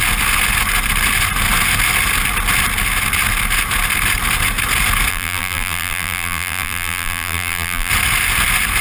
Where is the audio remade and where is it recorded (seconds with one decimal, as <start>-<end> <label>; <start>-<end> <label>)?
0.0-5.1 recorded; 5.1-7.9 remade; 7.9-8.8 recorded